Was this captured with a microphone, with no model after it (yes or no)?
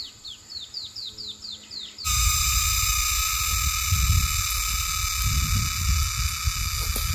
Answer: yes